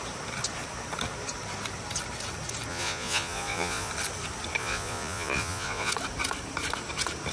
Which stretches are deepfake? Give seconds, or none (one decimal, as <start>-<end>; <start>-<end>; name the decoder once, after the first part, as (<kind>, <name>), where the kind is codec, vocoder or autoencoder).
2.7-3.9 (vocoder, Vocos); 4.6-5.9